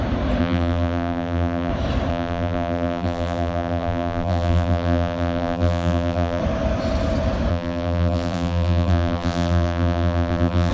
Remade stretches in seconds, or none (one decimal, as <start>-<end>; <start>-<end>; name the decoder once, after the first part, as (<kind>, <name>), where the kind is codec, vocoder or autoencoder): 0.4-1.7 (vocoder, BigVGAN v2); 2.1-6.4; 7.5-10.7